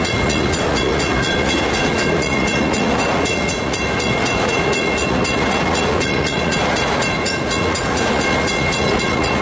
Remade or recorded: remade